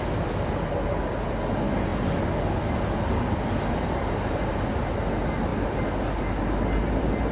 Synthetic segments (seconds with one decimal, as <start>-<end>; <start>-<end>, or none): none